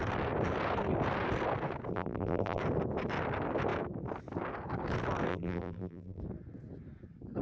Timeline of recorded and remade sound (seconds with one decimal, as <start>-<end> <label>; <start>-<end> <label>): 0.0-1.9 recorded; 1.9-2.6 remade; 2.6-5.3 recorded; 5.3-6.2 remade; 6.2-7.4 recorded